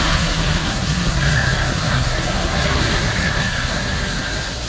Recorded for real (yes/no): no